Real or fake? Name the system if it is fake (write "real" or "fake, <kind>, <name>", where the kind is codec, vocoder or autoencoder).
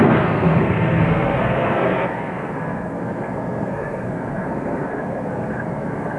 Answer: fake, codec, SNAC